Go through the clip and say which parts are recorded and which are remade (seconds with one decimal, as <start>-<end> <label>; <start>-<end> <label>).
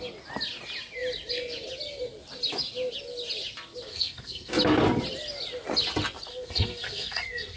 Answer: 0.0-3.9 recorded; 3.9-4.5 remade; 4.5-6.3 recorded; 6.3-7.6 remade